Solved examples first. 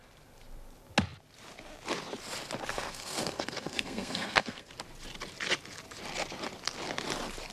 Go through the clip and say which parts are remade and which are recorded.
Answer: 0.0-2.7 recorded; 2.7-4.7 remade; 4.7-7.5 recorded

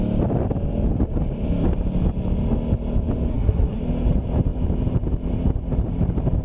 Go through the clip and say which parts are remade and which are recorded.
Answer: 0.0-3.3 recorded; 3.3-3.8 remade; 3.8-6.4 recorded

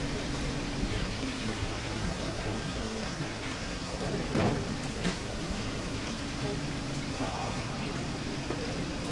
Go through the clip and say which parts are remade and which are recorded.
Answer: 0.0-0.9 recorded; 0.9-4.1 remade; 4.1-4.9 recorded; 4.9-6.2 remade; 6.2-7.1 recorded; 7.1-7.7 remade; 7.7-9.1 recorded

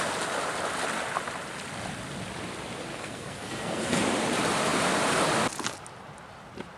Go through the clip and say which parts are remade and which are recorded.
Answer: 0.0-2.9 recorded; 2.9-4.0 remade; 4.0-6.8 recorded

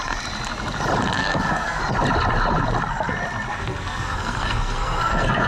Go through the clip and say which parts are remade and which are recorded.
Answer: 0.0-1.2 recorded; 1.2-1.8 remade; 1.8-3.5 recorded; 3.5-5.5 remade